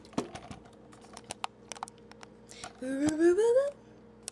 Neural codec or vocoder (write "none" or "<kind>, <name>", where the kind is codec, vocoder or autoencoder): none